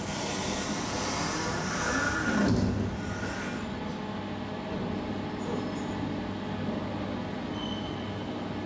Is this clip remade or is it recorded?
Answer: recorded